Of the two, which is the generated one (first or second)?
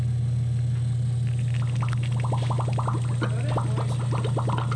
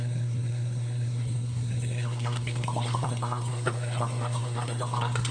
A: second